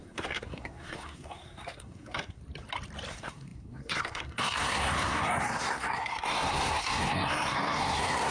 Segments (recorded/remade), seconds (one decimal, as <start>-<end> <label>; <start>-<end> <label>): 0.0-2.4 remade; 2.4-3.1 recorded; 3.1-8.3 remade